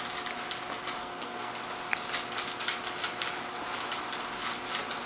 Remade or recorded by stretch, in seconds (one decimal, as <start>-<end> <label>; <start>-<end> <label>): 0.0-1.0 recorded; 1.0-1.5 remade; 1.5-5.1 recorded